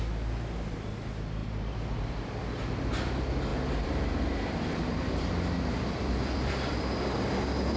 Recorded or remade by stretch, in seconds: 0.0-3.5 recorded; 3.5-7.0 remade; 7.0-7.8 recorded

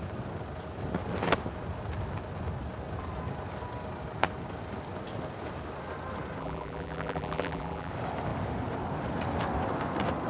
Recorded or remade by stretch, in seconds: 0.0-6.4 recorded; 6.4-7.9 remade; 7.9-10.3 recorded